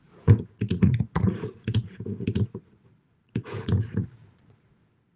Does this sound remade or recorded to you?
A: remade